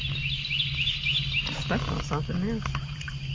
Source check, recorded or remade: recorded